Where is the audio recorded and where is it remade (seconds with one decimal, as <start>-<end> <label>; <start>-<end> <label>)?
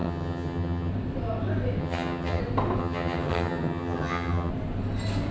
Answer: 0.0-0.9 remade; 0.9-1.8 recorded; 1.8-2.4 remade; 2.4-2.8 recorded; 2.8-4.5 remade; 4.5-5.3 recorded